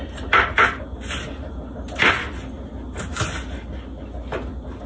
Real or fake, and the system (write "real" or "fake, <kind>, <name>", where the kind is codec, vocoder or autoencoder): real